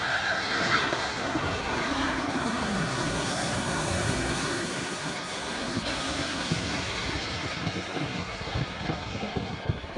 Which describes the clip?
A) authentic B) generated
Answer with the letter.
B